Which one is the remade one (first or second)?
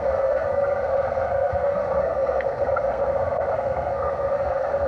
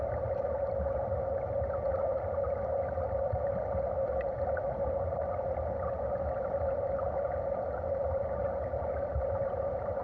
first